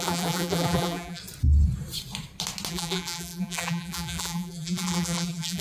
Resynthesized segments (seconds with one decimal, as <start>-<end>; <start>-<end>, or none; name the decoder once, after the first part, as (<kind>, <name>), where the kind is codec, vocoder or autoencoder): 0.0-1.2 (vocoder, BigVGAN v2); 2.7-5.6